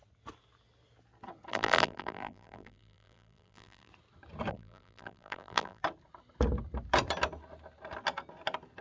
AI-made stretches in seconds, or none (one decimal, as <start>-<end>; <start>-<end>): 1.5-3.9; 4.5-5.8